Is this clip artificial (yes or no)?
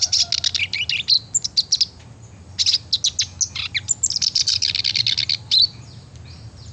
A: no